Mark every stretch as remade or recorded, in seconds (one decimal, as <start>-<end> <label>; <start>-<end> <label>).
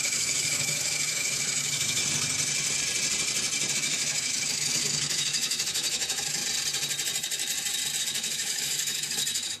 0.0-2.0 remade; 2.0-3.7 recorded; 3.7-6.4 remade; 6.4-8.0 recorded; 8.0-9.6 remade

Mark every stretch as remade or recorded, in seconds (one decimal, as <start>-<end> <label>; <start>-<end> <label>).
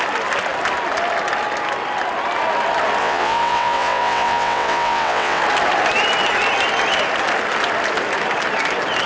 0.0-3.0 recorded; 3.0-5.4 remade; 5.4-9.1 recorded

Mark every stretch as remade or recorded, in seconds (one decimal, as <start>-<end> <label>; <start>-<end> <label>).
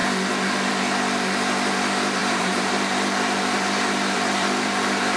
0.0-2.2 recorded; 2.2-5.2 remade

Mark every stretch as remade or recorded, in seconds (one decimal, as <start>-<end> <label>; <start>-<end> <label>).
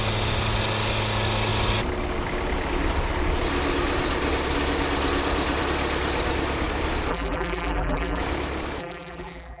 0.0-7.1 recorded; 7.1-8.2 remade; 8.2-8.8 recorded; 8.8-9.6 remade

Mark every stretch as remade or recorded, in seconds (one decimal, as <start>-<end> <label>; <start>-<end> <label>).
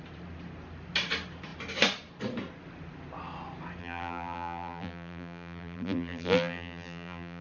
0.0-3.8 recorded; 3.8-7.4 remade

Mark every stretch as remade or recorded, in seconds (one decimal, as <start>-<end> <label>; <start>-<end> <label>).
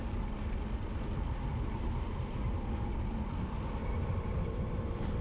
0.0-3.8 recorded; 3.8-4.8 remade; 4.8-5.2 recorded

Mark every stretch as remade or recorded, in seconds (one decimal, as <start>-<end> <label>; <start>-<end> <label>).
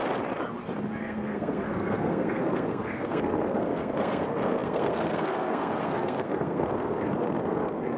0.0-1.0 recorded; 1.0-8.0 remade